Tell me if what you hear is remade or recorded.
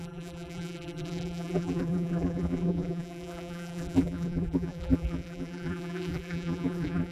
remade